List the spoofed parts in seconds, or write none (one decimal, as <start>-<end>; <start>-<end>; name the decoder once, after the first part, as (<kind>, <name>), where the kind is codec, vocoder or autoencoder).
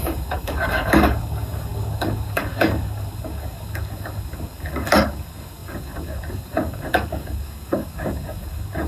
0.0-8.9 (codec, DAC)